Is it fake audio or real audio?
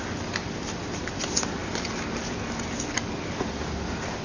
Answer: real